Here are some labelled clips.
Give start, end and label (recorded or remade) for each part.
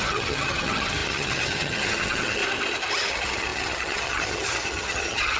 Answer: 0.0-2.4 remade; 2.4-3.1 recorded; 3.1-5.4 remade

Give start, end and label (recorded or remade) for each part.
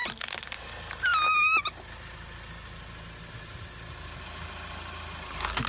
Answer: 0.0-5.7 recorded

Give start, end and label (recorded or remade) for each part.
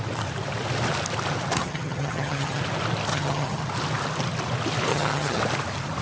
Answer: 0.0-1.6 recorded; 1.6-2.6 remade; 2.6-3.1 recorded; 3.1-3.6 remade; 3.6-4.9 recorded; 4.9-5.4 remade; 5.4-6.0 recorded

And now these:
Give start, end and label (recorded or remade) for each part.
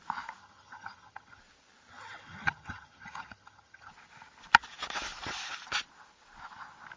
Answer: 0.0-0.4 recorded; 0.4-1.4 remade; 1.4-1.9 recorded; 1.9-3.9 remade; 3.9-7.0 recorded